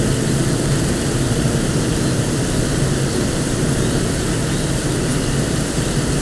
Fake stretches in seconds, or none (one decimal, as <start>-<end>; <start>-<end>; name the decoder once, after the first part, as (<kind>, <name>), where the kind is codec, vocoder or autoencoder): none